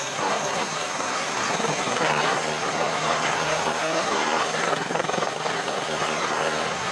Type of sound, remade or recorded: remade